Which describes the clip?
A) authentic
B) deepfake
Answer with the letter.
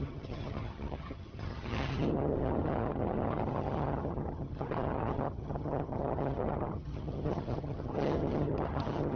B